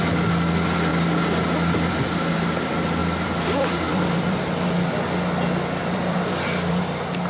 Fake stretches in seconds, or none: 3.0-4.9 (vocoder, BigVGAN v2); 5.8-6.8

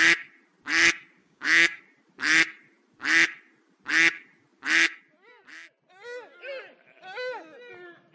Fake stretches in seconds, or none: 1.2-1.8 (codec, DAC)

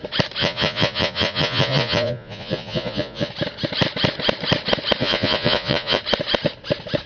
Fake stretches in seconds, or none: 0.4-3.3 (vocoder, Vocos); 5.0-6.0

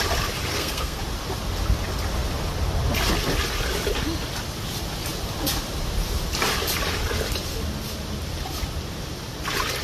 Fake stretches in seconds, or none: 0.5-1.0 (codec, SNAC)